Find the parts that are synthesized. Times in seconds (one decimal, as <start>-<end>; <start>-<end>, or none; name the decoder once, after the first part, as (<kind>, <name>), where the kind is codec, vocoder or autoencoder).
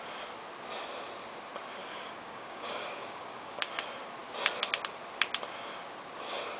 1.8-3.7 (codec, DAC)